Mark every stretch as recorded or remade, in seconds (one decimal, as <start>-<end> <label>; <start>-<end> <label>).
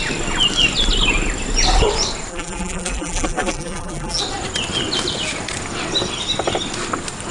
0.0-2.3 recorded; 2.3-4.2 remade; 4.2-7.3 recorded